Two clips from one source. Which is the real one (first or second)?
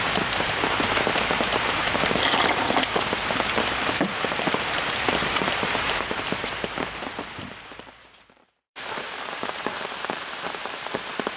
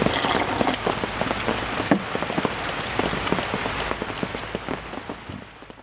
second